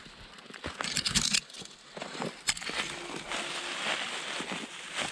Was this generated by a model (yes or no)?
no